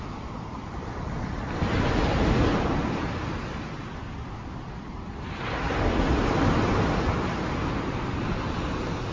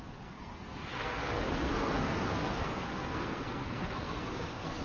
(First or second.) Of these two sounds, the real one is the first